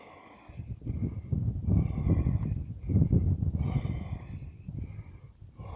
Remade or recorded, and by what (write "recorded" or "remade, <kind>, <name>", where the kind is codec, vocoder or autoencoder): recorded